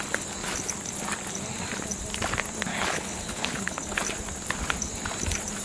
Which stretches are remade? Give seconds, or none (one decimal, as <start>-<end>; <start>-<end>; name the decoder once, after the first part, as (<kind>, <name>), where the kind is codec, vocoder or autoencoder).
2.7-4.0 (codec, HILCodec)